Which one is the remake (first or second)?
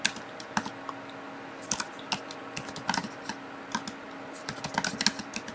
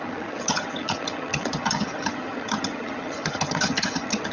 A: second